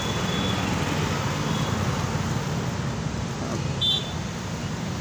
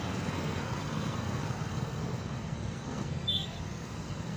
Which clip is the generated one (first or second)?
second